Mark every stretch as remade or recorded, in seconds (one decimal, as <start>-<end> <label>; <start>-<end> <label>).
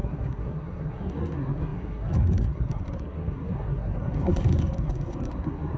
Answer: 0.0-5.8 remade